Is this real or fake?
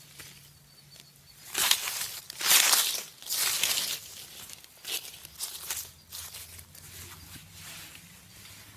real